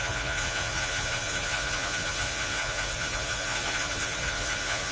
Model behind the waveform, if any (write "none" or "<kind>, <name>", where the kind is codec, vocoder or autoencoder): vocoder, Vocos